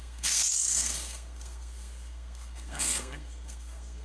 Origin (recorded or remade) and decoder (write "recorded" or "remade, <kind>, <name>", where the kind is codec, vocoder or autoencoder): remade, codec, SNAC